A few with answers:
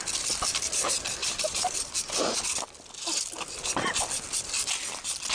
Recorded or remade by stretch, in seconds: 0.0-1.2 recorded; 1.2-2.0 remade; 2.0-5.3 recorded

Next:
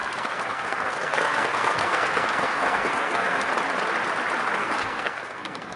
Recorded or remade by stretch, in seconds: 0.0-3.5 remade; 3.5-4.6 recorded; 4.6-5.8 remade